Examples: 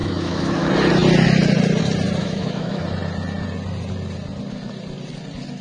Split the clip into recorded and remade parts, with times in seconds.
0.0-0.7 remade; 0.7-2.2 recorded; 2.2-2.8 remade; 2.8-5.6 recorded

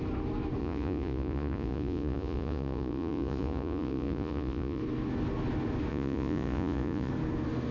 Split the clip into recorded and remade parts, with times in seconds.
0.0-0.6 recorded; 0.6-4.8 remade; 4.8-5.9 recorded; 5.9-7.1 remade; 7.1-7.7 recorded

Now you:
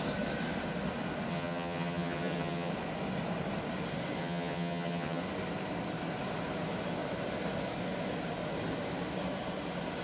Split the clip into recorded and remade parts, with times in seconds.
0.0-1.3 recorded; 1.3-2.7 remade; 2.7-4.2 recorded; 4.2-5.2 remade; 5.2-10.0 recorded

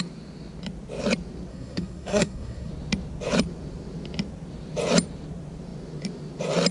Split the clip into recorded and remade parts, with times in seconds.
0.0-1.5 recorded; 1.5-2.7 remade; 2.7-6.7 recorded